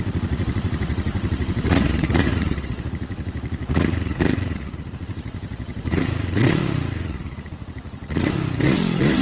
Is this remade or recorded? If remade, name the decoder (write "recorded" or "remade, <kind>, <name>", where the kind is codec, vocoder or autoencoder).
remade, vocoder, Vocos